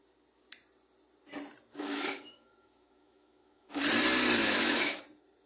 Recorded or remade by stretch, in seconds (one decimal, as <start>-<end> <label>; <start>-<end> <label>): 0.0-1.7 recorded; 1.7-3.8 remade; 3.8-4.4 recorded; 4.4-5.0 remade; 5.0-5.5 recorded